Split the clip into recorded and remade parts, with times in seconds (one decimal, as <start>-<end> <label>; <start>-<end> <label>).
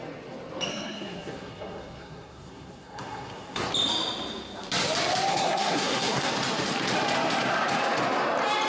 0.0-0.7 recorded; 0.7-3.7 remade; 3.7-5.3 recorded; 5.3-6.3 remade; 6.3-8.7 recorded